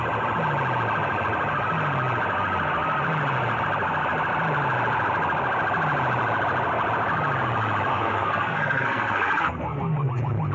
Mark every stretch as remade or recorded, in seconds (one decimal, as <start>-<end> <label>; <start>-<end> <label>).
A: 0.0-7.9 recorded; 7.9-10.1 remade; 10.1-10.5 recorded